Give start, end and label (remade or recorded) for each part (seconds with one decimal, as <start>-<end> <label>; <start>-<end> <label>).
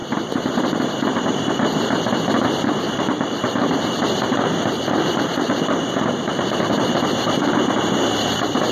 0.0-8.7 remade